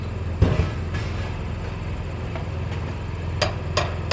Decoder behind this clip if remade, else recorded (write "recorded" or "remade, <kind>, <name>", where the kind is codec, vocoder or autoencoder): recorded